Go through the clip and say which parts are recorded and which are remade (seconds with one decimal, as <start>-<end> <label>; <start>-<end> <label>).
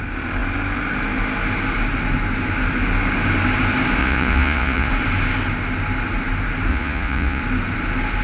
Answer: 0.0-4.0 recorded; 4.0-4.9 remade; 4.9-6.7 recorded; 6.7-7.4 remade; 7.4-8.2 recorded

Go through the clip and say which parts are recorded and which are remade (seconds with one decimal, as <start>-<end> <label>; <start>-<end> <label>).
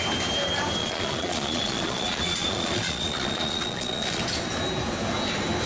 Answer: 0.0-0.8 recorded; 0.8-4.2 remade; 4.2-5.7 recorded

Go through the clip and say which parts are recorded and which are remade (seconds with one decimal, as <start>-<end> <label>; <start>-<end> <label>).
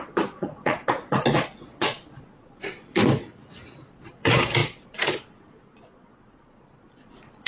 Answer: 0.0-3.0 remade; 3.0-3.9 recorded; 3.9-7.5 remade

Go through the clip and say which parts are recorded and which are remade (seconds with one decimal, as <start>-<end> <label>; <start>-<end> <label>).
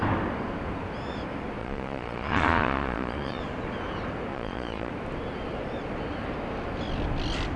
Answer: 0.0-1.6 recorded; 1.6-3.4 remade; 3.4-4.3 recorded; 4.3-4.9 remade; 4.9-7.6 recorded